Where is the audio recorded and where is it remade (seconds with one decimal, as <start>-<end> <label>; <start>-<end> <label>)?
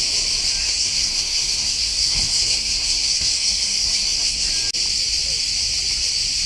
0.0-0.6 recorded; 0.6-4.5 remade; 4.5-6.5 recorded